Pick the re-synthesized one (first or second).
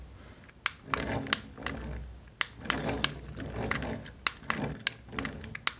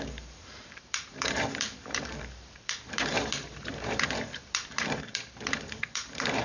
second